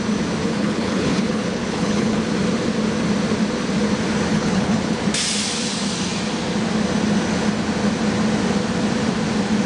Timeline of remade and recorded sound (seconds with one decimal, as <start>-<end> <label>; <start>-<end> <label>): 0.0-0.4 recorded; 0.4-2.2 remade; 2.2-4.3 recorded; 4.3-5.0 remade; 5.0-9.7 recorded